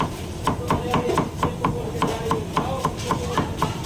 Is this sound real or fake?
real